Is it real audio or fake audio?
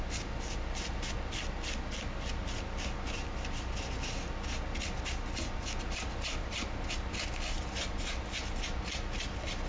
real